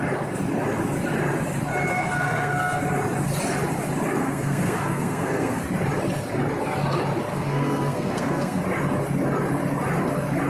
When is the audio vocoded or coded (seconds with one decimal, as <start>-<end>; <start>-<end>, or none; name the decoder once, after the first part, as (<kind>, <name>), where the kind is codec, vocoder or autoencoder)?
1.9-2.8 (codec, SNAC); 4.2-5.6; 7.3-8.6